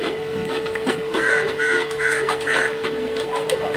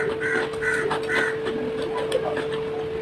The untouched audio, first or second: second